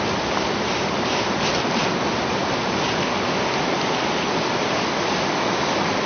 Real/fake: fake